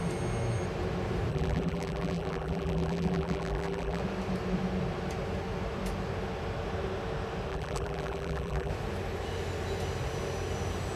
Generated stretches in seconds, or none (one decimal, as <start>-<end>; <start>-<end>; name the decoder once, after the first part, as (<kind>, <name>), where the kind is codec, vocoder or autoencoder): 1.3-4.0 (vocoder, BigVGAN v2); 7.5-8.7